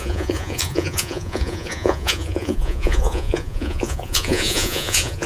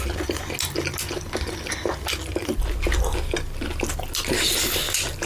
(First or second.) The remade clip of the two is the first